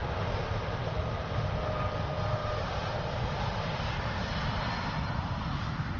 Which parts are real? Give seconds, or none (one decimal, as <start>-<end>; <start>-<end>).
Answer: 1.2-2.4; 3.7-6.0